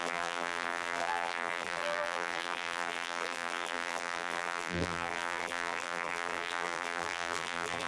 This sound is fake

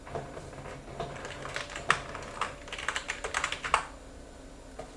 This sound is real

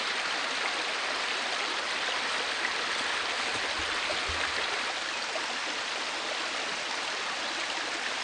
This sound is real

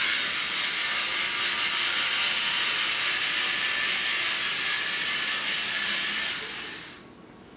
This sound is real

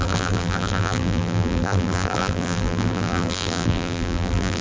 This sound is fake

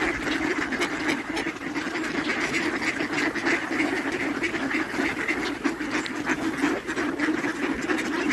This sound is real